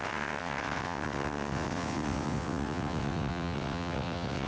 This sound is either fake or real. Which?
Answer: fake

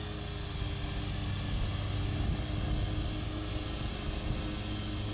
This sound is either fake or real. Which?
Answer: real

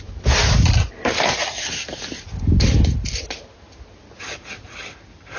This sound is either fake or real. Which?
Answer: real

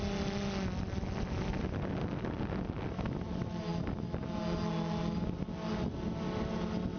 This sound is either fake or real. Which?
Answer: real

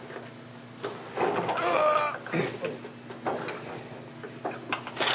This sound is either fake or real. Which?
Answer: real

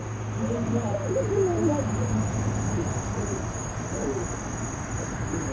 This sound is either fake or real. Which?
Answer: real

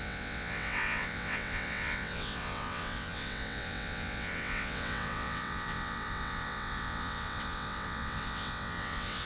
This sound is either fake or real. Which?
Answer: fake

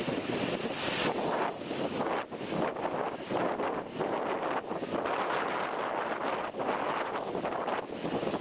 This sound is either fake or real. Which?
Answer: real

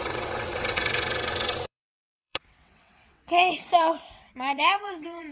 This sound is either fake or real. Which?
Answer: fake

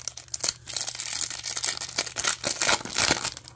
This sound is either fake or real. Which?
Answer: real